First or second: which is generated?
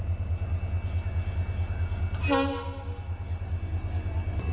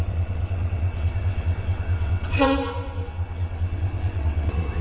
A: second